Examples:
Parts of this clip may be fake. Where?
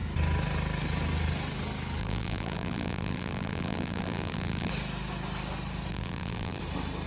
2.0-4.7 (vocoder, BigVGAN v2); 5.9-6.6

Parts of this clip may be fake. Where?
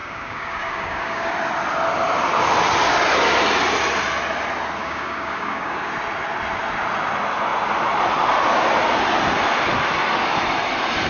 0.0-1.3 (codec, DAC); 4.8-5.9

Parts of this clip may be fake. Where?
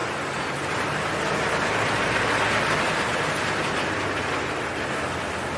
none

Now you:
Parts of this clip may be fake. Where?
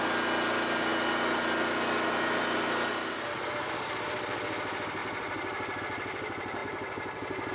5.0-5.8 (vocoder, BigVGAN v2)